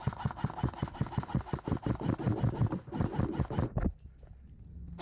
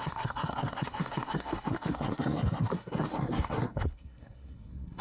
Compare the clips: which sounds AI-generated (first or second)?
second